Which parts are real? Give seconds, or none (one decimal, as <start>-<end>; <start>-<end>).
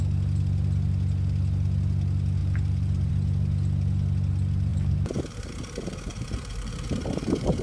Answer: 0.0-2.4; 3.1-4.7; 5.5-6.1